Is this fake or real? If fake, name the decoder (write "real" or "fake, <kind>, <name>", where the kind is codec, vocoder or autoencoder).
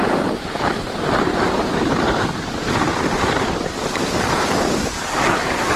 fake, vocoder, BigVGAN v2